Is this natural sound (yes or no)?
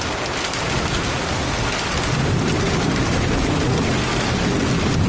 yes